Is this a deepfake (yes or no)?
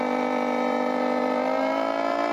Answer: yes